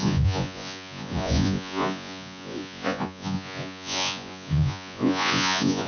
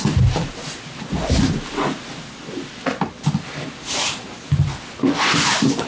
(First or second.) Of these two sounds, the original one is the second